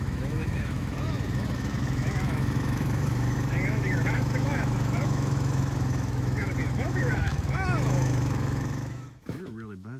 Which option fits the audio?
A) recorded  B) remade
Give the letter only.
B